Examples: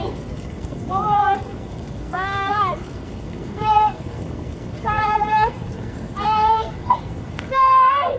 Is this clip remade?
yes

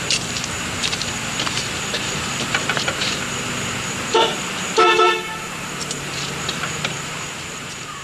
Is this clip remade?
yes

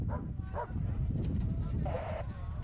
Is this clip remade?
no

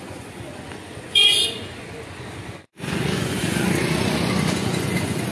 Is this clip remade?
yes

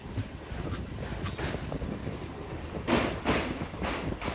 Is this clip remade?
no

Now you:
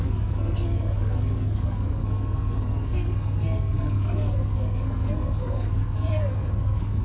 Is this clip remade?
yes